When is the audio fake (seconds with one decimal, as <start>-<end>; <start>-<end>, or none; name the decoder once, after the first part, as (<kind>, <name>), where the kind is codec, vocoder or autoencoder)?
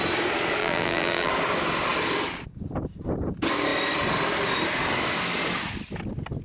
0.6-1.3 (vocoder, BigVGAN v2)